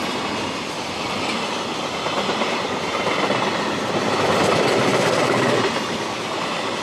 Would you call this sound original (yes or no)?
yes